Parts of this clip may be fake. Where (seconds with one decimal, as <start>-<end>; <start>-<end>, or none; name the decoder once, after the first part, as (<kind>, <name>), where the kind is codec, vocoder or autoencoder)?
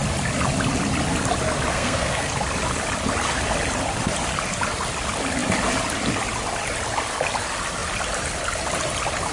1.7-2.3 (codec, SNAC)